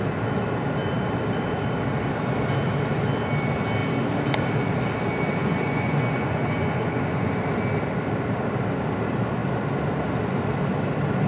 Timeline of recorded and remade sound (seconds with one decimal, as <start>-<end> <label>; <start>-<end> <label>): 0.0-5.4 recorded; 5.4-7.3 remade; 7.3-11.3 recorded